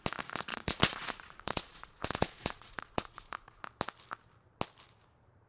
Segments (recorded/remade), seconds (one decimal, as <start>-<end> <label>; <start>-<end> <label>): 0.0-0.5 recorded; 0.5-3.6 remade; 3.6-5.5 recorded